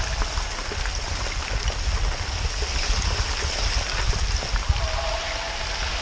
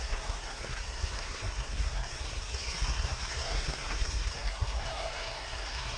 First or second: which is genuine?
first